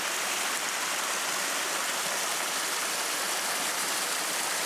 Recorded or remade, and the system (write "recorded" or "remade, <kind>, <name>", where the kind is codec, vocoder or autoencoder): recorded